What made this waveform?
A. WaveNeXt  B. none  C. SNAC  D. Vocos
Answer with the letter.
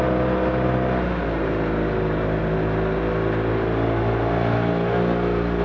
B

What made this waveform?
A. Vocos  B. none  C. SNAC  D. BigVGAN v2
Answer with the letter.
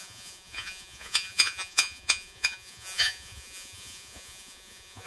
A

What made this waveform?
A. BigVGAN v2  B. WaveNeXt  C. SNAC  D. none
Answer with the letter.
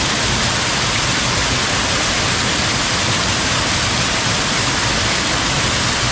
D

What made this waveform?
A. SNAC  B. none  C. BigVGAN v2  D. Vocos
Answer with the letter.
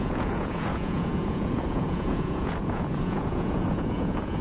D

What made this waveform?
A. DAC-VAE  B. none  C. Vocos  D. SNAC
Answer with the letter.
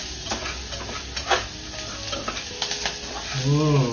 B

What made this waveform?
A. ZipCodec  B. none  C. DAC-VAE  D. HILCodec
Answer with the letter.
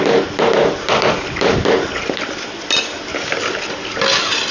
B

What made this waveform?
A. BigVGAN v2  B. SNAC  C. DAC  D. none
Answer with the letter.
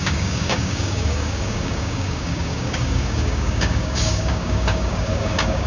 C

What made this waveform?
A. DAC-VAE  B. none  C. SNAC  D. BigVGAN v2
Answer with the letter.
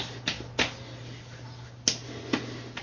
B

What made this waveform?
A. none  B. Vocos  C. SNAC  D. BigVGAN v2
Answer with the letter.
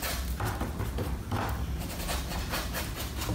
A